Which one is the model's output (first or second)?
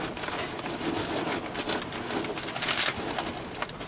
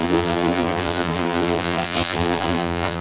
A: second